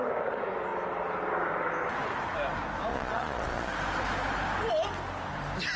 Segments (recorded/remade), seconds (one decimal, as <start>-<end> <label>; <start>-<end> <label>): 0.0-2.9 recorded; 2.9-3.7 remade; 3.7-5.8 recorded